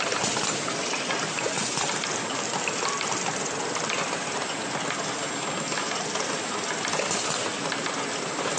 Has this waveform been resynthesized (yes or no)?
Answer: no